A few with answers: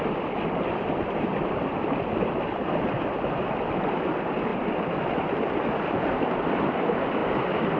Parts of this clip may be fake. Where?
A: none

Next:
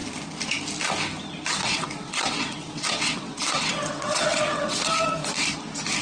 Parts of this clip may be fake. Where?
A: 1.6-5.0 (vocoder, WaveNeXt)

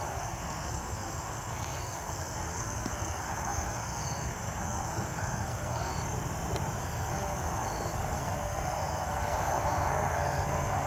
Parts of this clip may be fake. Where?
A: 0.0-5.9 (codec, SNAC); 6.8-10.9

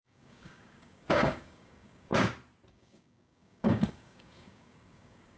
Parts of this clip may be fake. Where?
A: 0.0-2.1 (codec, DAC); 2.7-5.4

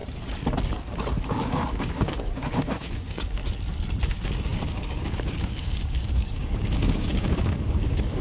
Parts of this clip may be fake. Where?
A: 1.3-3.4 (codec, DAC); 4.1-8.2